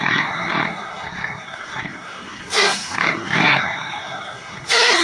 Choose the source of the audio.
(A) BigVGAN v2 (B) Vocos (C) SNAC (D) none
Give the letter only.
C